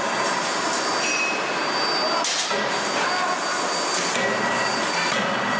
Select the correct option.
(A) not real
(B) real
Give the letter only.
B